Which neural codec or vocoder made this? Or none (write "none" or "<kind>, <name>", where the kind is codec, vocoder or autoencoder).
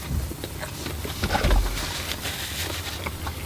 none